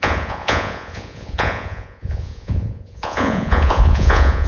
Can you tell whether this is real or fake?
fake